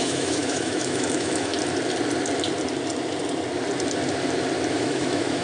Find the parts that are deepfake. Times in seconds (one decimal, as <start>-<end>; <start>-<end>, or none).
0.0-1.5; 4.7-5.4